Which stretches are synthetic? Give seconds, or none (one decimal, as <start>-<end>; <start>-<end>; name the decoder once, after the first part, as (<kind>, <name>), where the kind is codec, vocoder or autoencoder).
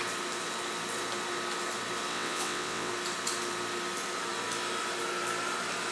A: 2.1-2.9 (vocoder, WaveNeXt)